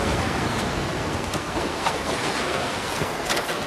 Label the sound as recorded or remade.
remade